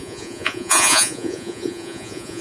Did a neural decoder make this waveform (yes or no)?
yes